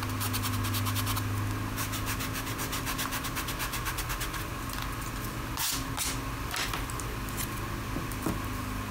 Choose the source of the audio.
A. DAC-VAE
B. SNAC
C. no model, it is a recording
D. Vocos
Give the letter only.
C